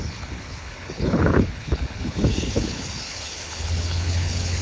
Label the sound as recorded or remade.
remade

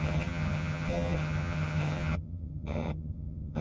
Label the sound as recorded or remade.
remade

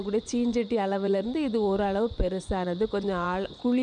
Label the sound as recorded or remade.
remade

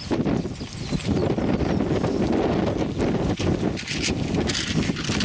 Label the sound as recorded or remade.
recorded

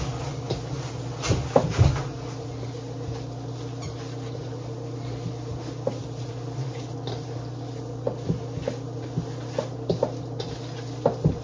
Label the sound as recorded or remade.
recorded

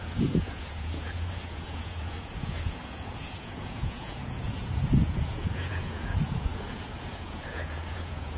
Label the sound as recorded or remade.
remade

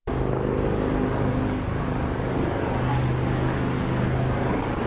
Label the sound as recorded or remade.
remade